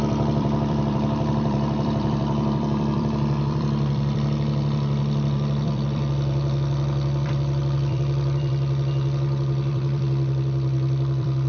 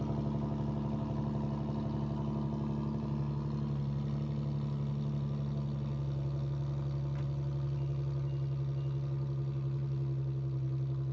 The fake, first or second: first